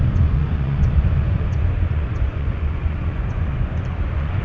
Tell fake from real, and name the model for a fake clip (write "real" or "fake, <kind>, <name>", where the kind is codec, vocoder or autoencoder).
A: fake, vocoder, Vocos